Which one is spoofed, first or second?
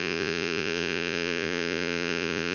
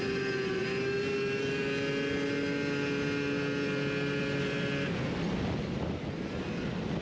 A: first